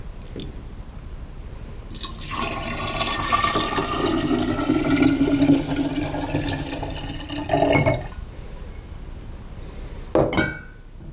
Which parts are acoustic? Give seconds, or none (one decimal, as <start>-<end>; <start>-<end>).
0.0-11.1